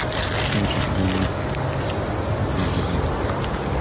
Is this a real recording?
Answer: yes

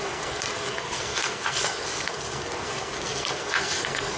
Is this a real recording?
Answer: no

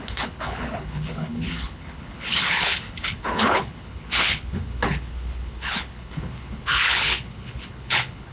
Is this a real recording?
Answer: no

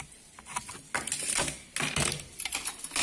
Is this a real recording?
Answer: yes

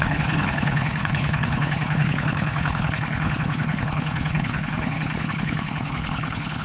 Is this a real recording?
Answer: no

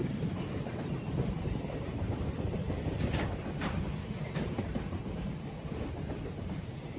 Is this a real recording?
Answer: no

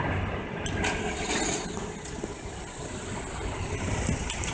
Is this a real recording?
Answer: yes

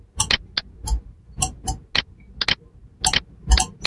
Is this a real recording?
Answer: yes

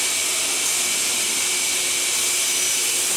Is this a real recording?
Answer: yes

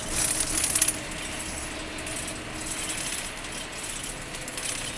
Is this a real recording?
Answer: yes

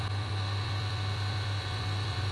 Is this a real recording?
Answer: no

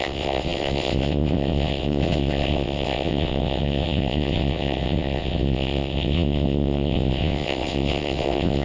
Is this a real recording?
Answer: no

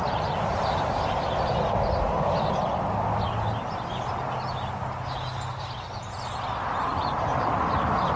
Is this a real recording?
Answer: yes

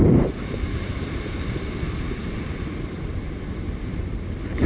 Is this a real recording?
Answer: no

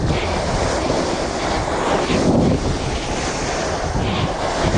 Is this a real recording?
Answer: yes